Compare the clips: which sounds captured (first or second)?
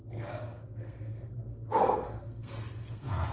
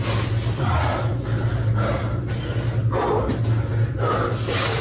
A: second